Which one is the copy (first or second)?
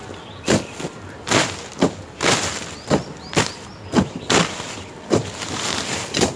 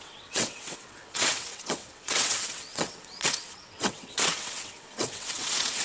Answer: second